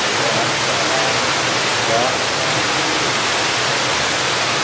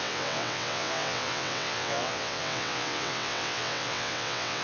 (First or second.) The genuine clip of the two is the first